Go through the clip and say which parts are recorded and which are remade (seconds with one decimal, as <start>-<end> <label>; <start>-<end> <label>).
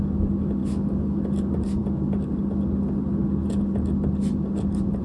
0.0-0.6 recorded; 0.6-1.2 remade; 1.2-5.0 recorded